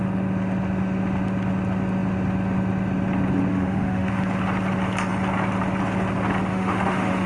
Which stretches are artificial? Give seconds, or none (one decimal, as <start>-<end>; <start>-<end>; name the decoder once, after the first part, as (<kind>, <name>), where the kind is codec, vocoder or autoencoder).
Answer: 3.5-4.1 (autoencoder, DAC-VAE); 6.5-7.3